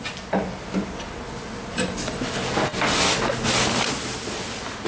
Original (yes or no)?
yes